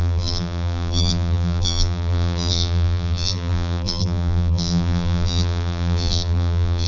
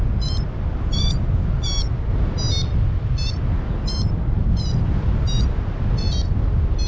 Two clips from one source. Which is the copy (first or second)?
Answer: first